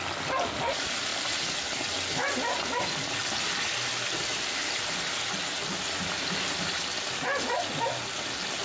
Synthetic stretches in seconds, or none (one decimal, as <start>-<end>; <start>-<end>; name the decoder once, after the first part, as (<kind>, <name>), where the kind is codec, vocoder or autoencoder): none

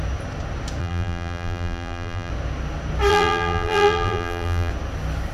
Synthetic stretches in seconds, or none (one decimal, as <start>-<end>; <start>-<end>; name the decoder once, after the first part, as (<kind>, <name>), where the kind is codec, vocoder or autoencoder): 0.8-2.3 (vocoder, BigVGAN v2); 3.1-4.7

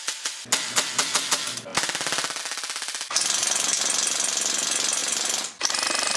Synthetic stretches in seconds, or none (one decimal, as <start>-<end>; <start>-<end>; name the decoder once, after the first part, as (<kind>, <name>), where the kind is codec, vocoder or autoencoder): none

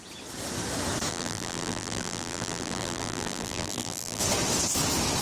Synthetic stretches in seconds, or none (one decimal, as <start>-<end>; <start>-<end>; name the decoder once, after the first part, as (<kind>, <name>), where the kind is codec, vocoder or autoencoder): 1.1-4.2 (vocoder, BigVGAN v2)

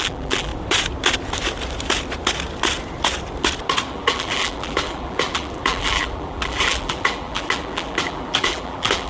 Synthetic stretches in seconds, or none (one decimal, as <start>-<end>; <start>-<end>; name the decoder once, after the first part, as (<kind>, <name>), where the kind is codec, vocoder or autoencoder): 0.0-0.5 (vocoder, BigVGAN v2); 3.9-9.1